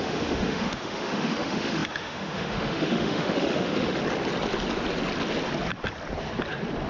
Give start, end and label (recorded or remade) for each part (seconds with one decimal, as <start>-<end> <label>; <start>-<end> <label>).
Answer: 0.0-4.0 remade; 4.0-6.9 recorded